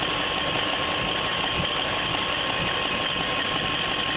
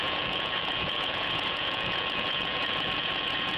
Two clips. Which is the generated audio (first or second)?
second